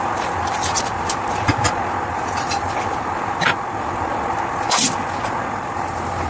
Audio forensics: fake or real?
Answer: fake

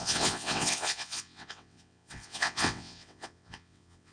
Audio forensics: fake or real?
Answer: fake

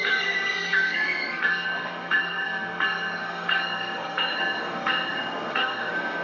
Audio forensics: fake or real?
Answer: fake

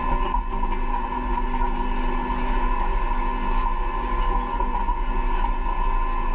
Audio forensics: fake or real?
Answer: real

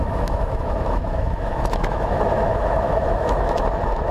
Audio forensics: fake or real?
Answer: fake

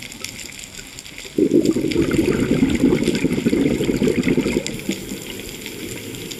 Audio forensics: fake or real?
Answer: real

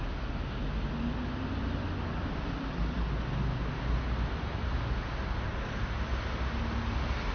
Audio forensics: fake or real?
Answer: real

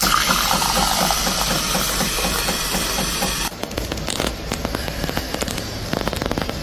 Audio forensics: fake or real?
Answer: fake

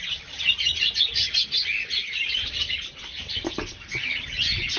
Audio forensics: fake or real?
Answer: real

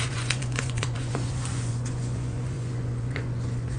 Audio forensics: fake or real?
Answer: fake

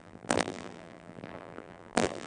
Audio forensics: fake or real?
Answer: fake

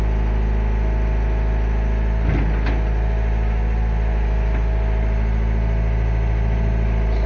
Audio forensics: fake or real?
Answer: real